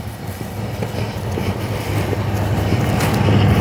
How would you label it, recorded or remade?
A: recorded